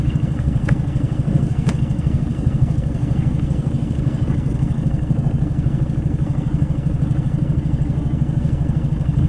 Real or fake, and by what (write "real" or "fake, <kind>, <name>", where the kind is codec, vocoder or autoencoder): fake, codec, SNAC